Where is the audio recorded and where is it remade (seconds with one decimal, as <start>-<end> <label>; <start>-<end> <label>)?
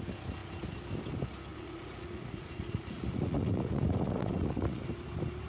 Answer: 0.0-1.5 recorded; 1.5-4.8 remade; 4.8-5.5 recorded